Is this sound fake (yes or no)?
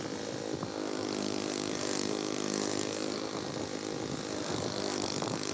no